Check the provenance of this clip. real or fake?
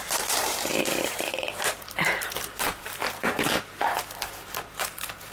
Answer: fake